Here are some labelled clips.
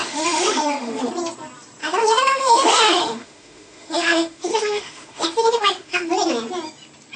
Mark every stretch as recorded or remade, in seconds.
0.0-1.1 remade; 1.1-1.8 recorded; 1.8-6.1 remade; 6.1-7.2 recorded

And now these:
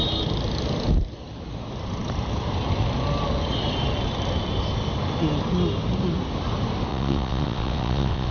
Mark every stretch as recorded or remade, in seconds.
0.0-6.9 recorded; 6.9-8.3 remade

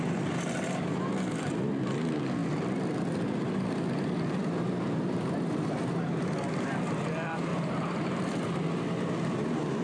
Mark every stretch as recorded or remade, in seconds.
0.0-4.4 recorded; 4.4-6.5 remade; 6.5-7.5 recorded; 7.5-9.8 remade

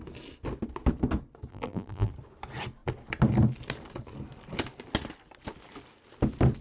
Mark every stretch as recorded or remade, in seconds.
0.0-1.5 recorded; 1.5-2.1 remade; 2.1-6.6 recorded

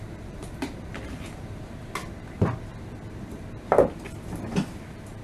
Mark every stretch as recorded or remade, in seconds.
0.0-5.2 remade

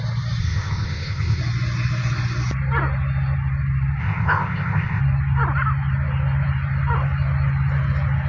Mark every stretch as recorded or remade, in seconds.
0.0-0.4 recorded; 0.4-1.4 remade; 1.4-4.0 recorded; 4.0-5.0 remade; 5.0-8.3 recorded